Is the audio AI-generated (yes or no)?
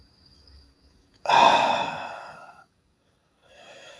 yes